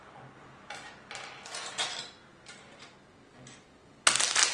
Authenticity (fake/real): real